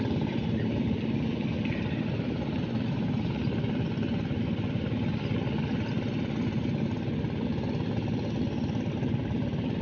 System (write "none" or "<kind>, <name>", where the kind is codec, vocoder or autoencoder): none